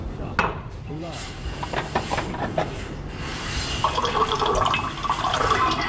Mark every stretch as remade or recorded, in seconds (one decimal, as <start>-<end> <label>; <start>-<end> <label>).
0.0-0.4 recorded; 0.4-2.9 remade; 2.9-3.3 recorded; 3.3-4.5 remade; 4.5-5.9 recorded